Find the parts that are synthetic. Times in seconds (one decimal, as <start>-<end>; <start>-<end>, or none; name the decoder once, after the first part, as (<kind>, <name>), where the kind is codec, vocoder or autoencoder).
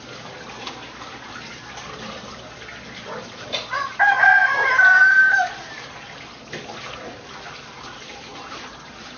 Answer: 4.4-6.2 (vocoder, BigVGAN v2)